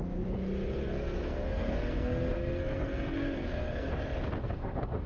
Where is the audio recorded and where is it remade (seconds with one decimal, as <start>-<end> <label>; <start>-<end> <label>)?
0.0-0.8 recorded; 0.8-3.9 remade; 3.9-4.4 recorded; 4.4-5.1 remade